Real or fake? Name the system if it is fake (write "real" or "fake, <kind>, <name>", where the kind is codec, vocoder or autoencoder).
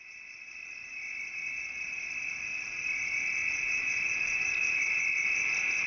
real